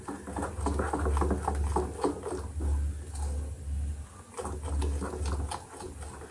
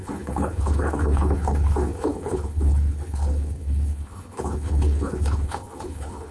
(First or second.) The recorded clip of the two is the first